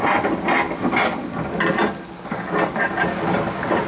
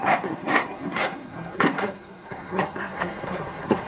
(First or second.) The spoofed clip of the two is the second